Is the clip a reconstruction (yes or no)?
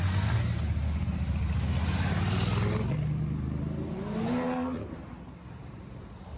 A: no